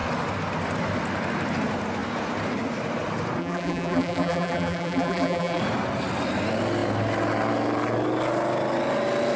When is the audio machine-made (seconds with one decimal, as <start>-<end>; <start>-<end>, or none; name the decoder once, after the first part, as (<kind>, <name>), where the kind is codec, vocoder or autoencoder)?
3.4-5.6 (vocoder, BigVGAN v2)